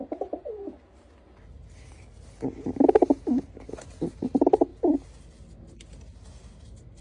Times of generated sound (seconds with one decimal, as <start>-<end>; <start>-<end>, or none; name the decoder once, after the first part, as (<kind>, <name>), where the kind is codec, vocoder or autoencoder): none